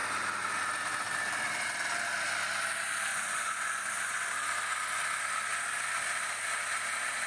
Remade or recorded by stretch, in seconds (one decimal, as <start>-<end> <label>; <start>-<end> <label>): 0.0-3.1 recorded; 3.1-4.3 remade; 4.3-7.3 recorded